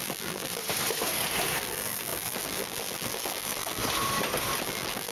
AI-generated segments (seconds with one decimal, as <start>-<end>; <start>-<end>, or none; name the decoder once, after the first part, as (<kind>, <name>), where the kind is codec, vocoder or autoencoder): 0.0-0.6 (vocoder, BigVGAN v2); 1.6-3.8; 4.6-5.1